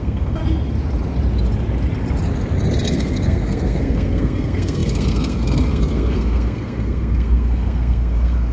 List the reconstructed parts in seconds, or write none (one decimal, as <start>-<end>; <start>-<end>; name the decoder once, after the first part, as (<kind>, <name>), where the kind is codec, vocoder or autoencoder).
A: 0.0-0.4 (codec, SNAC); 2.9-8.5